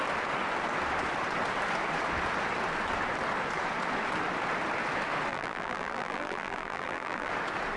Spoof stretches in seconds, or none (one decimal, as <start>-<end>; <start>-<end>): 5.3-7.3